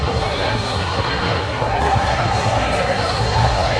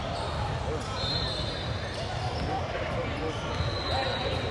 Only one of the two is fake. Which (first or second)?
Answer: first